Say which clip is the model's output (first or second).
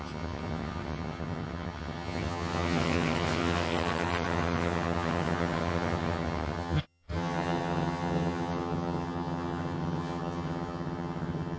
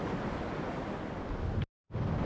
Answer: first